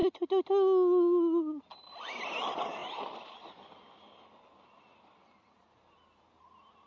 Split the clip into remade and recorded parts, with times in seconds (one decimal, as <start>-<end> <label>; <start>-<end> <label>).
0.0-6.9 recorded